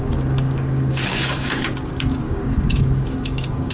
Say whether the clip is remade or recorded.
remade